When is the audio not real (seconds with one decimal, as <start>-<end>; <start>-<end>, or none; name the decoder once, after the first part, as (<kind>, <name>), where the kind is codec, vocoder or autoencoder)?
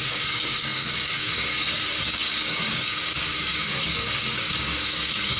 0.0-5.4 (codec, DAC)